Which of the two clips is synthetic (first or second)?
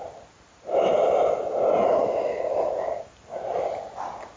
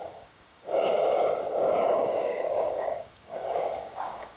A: second